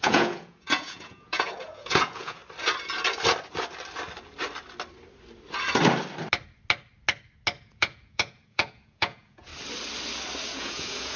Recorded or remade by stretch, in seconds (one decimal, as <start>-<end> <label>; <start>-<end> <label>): 0.0-2.4 remade; 2.4-7.6 recorded; 7.6-9.5 remade; 9.5-10.5 recorded; 10.5-11.2 remade